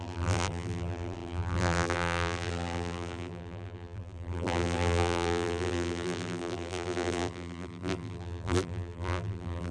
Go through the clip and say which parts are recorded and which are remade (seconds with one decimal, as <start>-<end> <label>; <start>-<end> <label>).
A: 0.0-9.7 remade